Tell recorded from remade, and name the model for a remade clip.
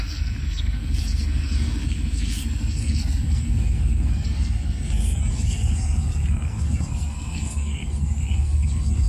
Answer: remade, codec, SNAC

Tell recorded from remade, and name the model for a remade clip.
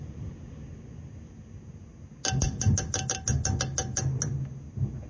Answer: recorded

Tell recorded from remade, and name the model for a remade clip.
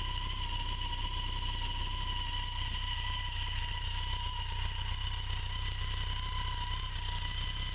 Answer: recorded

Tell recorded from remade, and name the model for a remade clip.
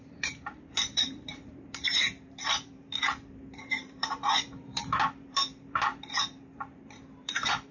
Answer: remade, vocoder, BigVGAN v2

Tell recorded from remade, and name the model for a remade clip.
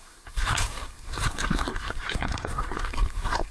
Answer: remade, codec, SNAC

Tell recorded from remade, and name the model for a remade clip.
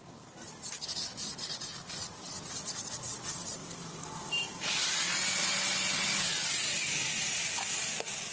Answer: recorded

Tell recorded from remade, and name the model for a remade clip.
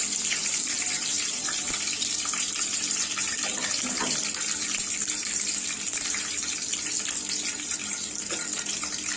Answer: recorded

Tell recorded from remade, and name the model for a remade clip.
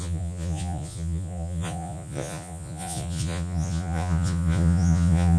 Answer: remade, vocoder, Vocos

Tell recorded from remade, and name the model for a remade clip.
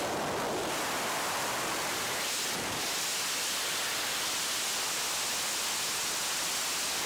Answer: recorded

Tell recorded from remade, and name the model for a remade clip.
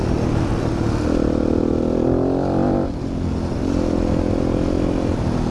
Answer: recorded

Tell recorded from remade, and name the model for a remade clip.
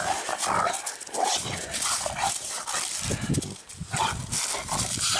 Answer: recorded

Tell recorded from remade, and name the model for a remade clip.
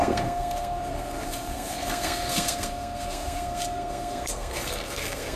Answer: remade, codec, SNAC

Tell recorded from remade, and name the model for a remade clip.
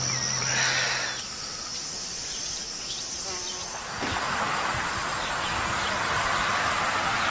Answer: recorded